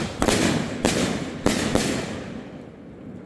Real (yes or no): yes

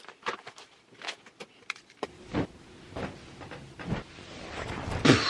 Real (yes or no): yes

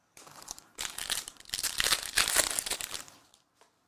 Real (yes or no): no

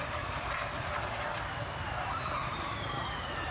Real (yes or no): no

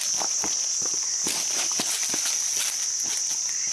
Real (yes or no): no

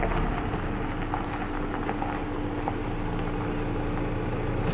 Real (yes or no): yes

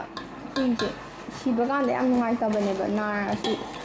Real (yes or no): yes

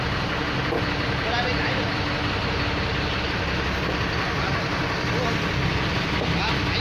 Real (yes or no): yes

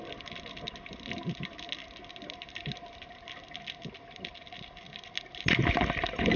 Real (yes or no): yes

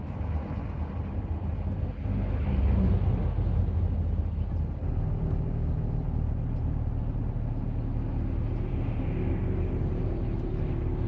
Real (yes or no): yes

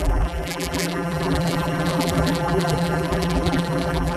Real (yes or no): no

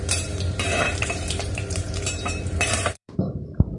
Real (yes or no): no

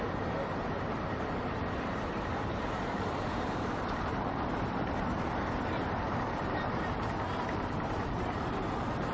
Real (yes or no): no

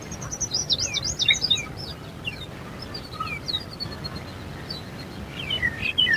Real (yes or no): no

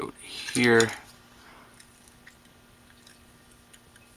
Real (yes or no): yes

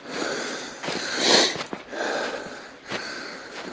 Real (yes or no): no